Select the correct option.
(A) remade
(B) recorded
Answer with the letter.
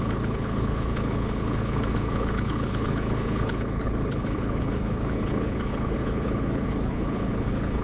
A